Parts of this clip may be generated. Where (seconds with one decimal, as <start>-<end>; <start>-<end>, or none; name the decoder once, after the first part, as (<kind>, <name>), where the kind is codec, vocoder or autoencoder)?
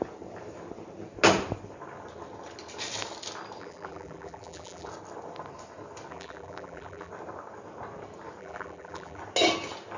3.6-4.9 (vocoder, BigVGAN v2); 6.1-7.1; 8.4-9.2